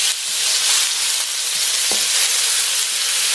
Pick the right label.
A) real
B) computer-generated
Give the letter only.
A